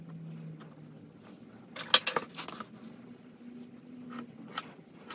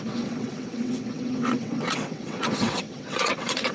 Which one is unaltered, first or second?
first